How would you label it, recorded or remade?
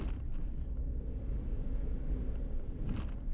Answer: recorded